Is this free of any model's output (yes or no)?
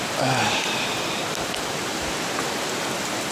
yes